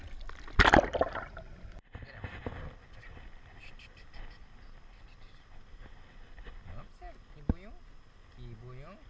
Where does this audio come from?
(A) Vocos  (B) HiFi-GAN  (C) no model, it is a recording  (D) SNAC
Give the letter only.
C